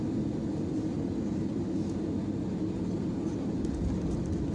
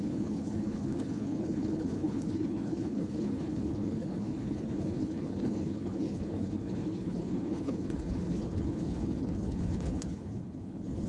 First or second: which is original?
first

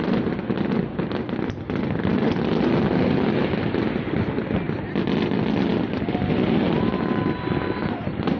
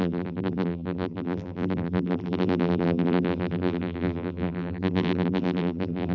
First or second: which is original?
first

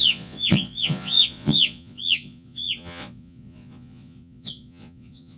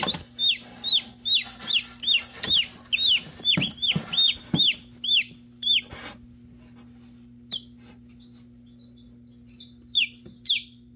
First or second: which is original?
second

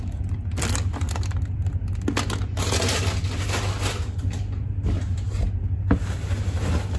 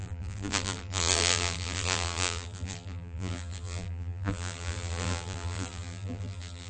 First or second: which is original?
first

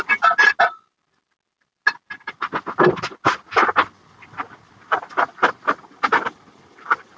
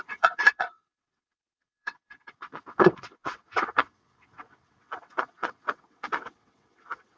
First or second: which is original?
first